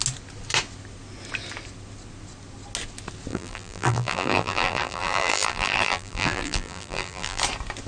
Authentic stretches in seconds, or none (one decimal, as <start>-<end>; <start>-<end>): 0.0-3.3; 7.4-7.9

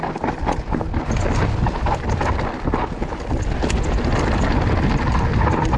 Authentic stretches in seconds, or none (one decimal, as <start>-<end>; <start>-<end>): 0.0-5.8